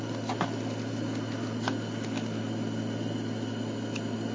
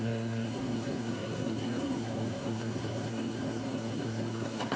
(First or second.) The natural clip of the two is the first